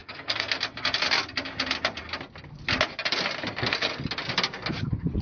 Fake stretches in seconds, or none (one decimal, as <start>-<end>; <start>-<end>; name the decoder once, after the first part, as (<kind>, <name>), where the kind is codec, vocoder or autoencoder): 0.0-0.6 (codec, SNAC)